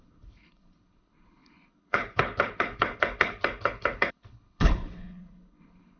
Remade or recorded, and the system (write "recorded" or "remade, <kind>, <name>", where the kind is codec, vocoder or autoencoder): remade, codec, HILCodec